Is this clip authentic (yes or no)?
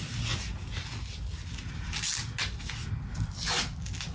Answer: yes